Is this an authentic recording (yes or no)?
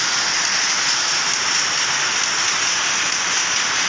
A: yes